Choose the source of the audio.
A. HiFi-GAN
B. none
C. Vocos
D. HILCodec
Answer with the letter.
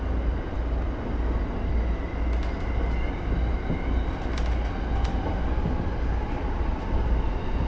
B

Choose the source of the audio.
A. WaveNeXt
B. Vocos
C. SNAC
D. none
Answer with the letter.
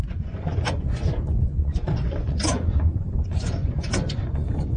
B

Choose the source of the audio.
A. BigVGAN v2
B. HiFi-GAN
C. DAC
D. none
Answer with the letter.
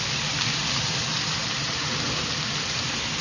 D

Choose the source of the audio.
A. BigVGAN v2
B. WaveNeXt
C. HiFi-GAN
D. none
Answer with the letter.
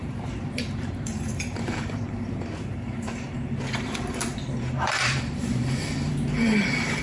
A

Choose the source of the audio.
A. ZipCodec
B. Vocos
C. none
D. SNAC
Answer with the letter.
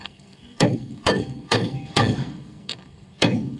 D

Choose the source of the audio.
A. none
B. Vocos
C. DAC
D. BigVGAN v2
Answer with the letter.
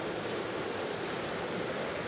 D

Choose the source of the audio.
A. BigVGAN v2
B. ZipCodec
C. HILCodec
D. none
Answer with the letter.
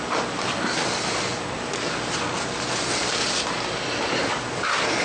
D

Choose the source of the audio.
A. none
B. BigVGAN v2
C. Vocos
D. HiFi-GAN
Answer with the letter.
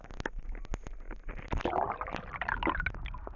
A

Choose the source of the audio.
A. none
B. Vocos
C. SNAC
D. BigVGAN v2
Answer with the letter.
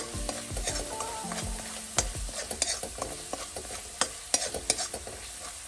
A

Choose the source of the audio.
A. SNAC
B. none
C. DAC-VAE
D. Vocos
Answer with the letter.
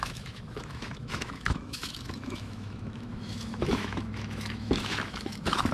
C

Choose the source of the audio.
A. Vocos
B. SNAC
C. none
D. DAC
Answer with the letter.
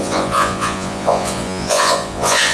A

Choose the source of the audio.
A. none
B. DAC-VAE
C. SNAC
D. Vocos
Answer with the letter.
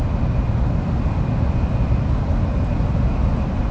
A